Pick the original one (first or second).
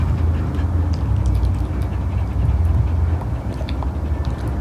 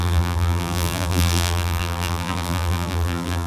first